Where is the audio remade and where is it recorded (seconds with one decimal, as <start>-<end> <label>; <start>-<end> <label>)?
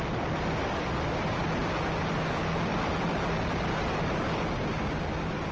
0.0-5.5 recorded